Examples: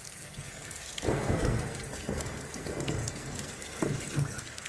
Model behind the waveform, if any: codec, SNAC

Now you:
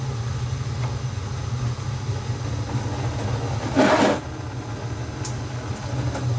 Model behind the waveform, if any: none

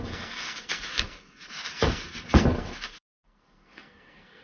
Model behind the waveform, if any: codec, SNAC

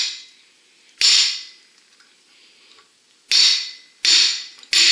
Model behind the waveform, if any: none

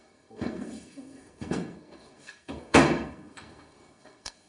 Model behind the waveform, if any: codec, SNAC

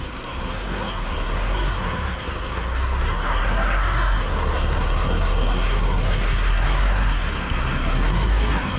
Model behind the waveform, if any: codec, SNAC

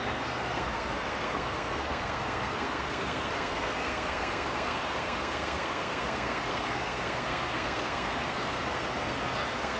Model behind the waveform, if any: codec, SNAC